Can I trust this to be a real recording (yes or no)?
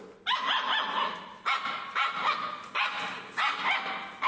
yes